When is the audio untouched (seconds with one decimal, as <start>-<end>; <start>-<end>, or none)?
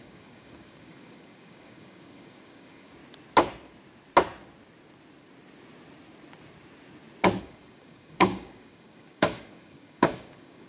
3.0-7.4